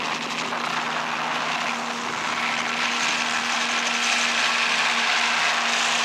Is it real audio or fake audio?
real